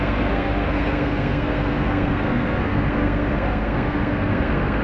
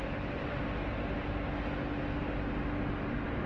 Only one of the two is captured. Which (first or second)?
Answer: second